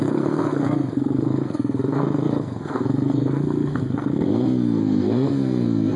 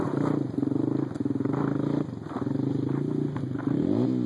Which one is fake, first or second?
first